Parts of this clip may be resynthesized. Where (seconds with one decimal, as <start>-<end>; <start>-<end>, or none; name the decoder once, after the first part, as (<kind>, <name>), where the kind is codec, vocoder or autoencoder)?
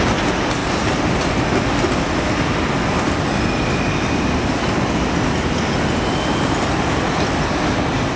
none